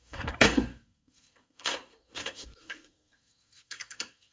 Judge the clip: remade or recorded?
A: remade